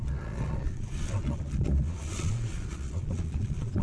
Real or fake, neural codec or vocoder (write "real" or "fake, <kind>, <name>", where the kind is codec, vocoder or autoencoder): fake, vocoder, Vocos